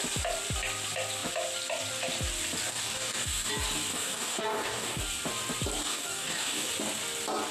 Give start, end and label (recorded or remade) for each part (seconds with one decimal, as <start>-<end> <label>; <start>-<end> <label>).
0.0-2.7 recorded; 2.7-3.5 remade; 3.5-3.9 recorded; 3.9-5.0 remade; 5.0-5.8 recorded; 5.8-6.7 remade; 6.7-7.5 recorded